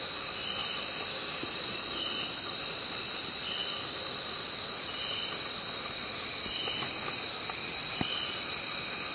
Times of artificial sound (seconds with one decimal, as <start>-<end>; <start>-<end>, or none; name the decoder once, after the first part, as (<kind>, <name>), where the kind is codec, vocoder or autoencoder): none